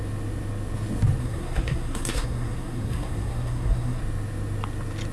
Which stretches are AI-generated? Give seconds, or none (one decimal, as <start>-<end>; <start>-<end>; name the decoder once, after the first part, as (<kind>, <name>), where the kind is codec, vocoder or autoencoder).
1.2-4.0 (codec, SNAC)